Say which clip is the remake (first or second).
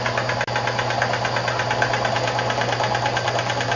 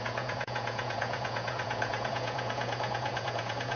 second